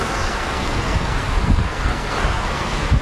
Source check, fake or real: fake